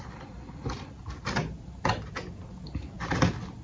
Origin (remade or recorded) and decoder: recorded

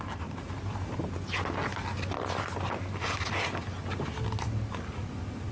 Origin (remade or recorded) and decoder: recorded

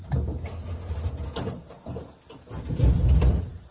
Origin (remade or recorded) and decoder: recorded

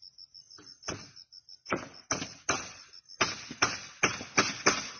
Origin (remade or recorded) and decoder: recorded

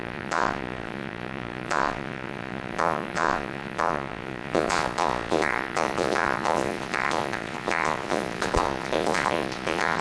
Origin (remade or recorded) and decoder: remade, vocoder, Vocos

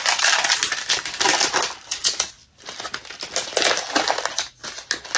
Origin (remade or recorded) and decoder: recorded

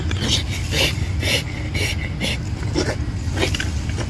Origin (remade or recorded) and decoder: recorded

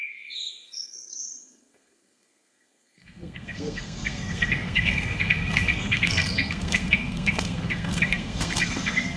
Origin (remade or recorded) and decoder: remade, codec, SNAC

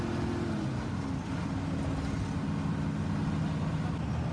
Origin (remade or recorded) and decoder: recorded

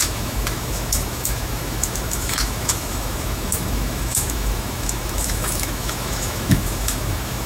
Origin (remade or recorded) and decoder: remade, autoencoder, DAC-VAE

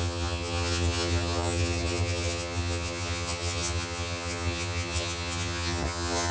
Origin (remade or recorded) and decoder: remade, vocoder, HiFi-GAN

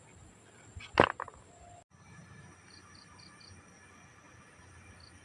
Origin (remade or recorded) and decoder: recorded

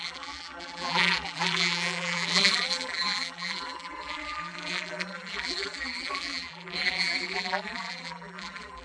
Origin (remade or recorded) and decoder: remade, vocoder, BigVGAN v2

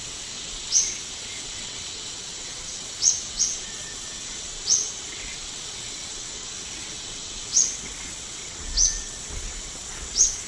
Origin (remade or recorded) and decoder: remade, vocoder, WaveNeXt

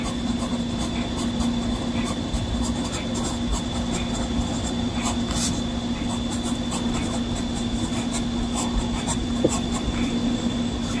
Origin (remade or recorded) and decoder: recorded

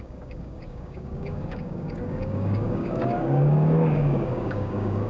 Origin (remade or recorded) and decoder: remade, codec, DAC